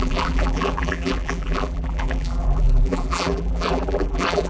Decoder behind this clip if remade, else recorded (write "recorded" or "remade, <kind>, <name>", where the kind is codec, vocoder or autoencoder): remade, vocoder, BigVGAN v2